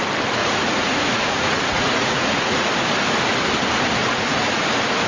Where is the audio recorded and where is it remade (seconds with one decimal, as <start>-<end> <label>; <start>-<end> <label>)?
0.0-0.4 recorded; 0.4-2.7 remade; 2.7-4.0 recorded; 4.0-4.6 remade; 4.6-5.1 recorded